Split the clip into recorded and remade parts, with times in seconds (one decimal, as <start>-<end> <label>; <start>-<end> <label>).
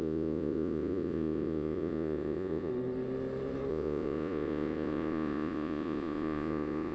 0.0-2.7 remade; 2.7-3.7 recorded; 3.7-6.9 remade